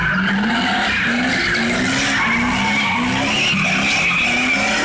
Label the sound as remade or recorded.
recorded